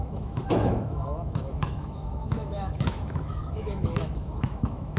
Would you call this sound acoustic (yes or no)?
no